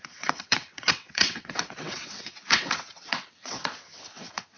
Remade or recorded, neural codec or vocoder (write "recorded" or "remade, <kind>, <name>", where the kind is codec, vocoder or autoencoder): remade, vocoder, WaveNeXt